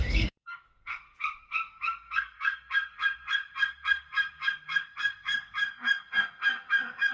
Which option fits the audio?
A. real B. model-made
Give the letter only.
B